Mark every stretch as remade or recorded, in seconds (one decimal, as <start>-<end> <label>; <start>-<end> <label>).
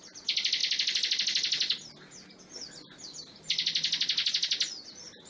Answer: 0.0-5.3 recorded